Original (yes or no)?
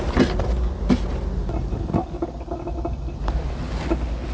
yes